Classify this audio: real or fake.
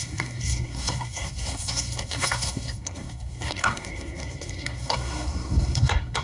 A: fake